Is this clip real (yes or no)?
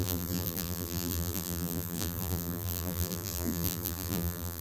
no